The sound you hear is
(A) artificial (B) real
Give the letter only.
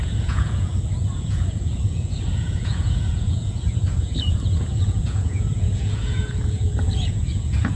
A